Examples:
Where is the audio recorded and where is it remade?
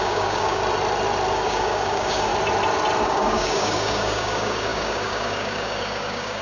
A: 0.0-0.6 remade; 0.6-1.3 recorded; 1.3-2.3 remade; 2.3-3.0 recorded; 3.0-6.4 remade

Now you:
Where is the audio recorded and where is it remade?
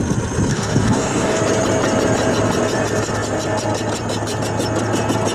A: 0.0-0.5 recorded; 0.5-1.4 remade; 1.4-5.3 recorded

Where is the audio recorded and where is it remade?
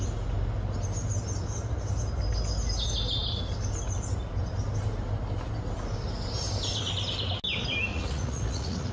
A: 0.0-7.9 recorded; 7.9-8.9 remade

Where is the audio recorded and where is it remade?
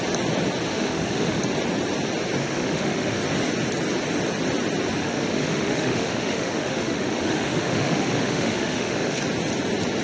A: 0.0-0.7 recorded; 0.7-1.4 remade; 1.4-2.4 recorded; 2.4-3.2 remade; 3.2-5.0 recorded; 5.0-9.2 remade; 9.2-10.0 recorded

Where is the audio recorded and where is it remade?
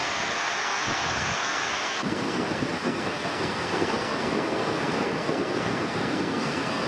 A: 0.0-6.9 remade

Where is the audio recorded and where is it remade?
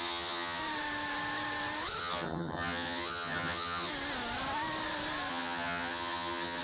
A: 0.0-0.6 remade; 0.6-2.0 recorded; 2.0-3.9 remade; 3.9-5.3 recorded; 5.3-6.6 remade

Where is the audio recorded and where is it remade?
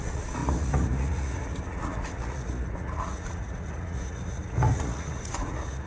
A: 0.0-5.9 remade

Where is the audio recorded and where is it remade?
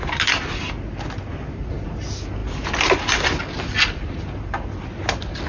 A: 0.0-5.5 recorded